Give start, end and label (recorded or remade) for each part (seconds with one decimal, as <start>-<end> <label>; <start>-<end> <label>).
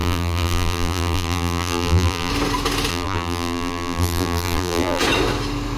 0.0-2.3 remade; 2.3-2.9 recorded; 2.9-5.0 remade; 5.0-5.8 recorded